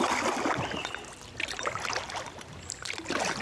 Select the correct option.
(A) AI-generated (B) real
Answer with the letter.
B